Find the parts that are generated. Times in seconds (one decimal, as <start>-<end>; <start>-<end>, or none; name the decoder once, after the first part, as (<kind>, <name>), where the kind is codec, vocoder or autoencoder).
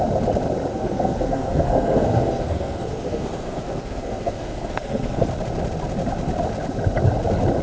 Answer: 0.7-5.3 (codec, SNAC)